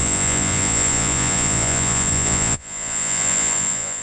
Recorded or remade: remade